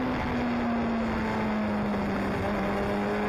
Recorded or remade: recorded